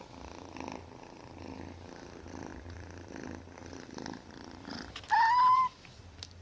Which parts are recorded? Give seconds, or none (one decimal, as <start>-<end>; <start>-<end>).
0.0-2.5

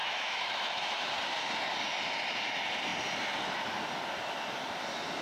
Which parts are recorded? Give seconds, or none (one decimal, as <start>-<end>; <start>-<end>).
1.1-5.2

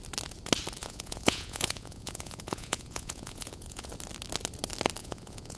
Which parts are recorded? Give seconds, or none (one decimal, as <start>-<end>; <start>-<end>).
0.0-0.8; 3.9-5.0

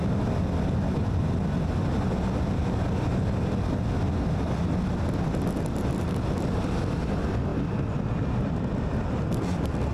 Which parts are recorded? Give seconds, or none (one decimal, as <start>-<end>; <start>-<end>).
0.0-9.9